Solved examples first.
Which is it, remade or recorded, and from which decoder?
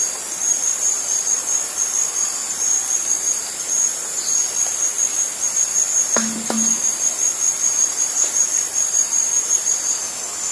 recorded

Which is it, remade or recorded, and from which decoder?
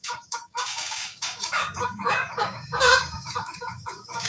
remade, codec, DAC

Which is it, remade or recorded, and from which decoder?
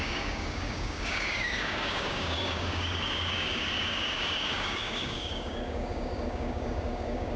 remade, codec, DAC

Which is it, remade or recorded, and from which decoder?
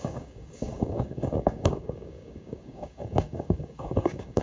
remade, codec, DAC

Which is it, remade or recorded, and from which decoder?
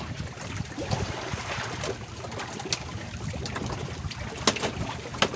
recorded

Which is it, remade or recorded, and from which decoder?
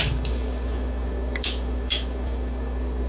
remade, codec, DAC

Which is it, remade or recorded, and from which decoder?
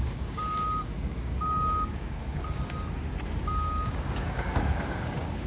remade, codec, DAC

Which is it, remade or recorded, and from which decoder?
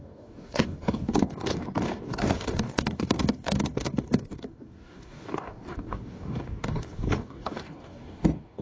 remade, codec, DAC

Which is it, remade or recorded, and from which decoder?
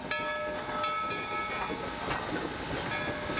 recorded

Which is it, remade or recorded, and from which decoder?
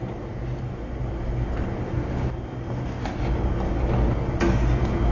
recorded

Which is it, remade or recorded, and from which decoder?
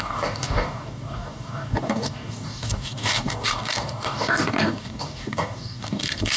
remade, codec, DAC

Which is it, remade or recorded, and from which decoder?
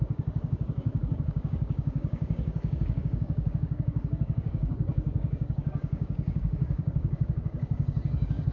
remade, codec, DAC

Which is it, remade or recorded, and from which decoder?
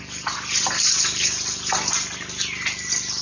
recorded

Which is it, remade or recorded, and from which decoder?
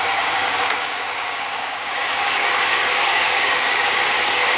remade, codec, DAC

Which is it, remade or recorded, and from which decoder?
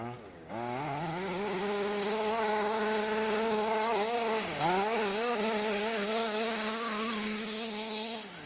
remade, codec, DAC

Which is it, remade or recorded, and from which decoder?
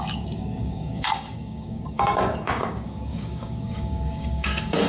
remade, codec, DAC